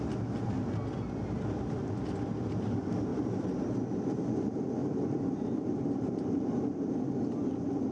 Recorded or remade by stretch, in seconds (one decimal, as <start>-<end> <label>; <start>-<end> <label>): 0.0-3.1 recorded; 3.1-4.3 remade; 4.3-4.8 recorded; 4.8-6.9 remade; 6.9-7.9 recorded

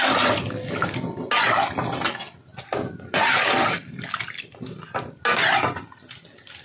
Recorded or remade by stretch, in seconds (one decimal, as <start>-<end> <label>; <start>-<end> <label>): 0.0-6.6 recorded